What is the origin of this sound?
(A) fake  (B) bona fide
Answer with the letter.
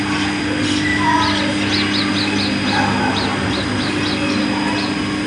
B